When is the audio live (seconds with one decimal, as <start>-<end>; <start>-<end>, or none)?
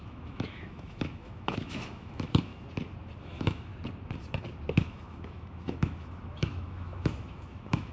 2.5-3.2; 3.7-4.7